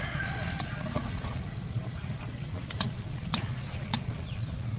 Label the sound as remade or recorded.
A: remade